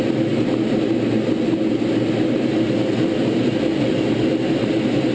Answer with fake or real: real